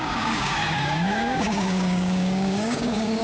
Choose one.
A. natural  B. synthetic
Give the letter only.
B